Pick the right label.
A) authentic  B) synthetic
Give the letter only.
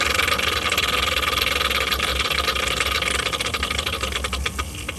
A